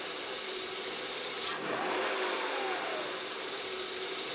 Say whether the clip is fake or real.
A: real